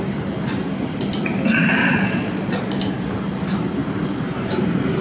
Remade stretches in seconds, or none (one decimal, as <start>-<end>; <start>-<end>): 1.8-2.7